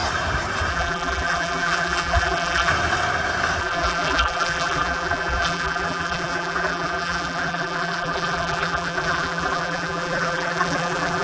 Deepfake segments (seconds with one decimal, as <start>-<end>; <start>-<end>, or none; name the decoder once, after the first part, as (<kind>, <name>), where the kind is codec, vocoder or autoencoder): 0.7-2.7 (vocoder, BigVGAN v2); 3.6-11.2